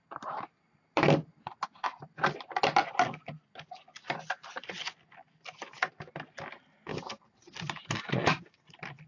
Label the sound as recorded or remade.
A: recorded